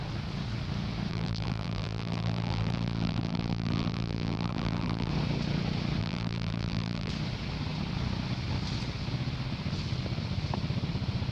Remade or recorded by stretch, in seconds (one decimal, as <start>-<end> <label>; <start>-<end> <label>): 0.0-1.1 recorded; 1.1-5.1 remade; 5.1-6.0 recorded; 6.0-7.1 remade; 7.1-11.3 recorded